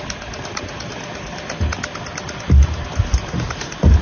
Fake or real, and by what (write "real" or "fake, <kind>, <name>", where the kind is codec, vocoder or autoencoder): real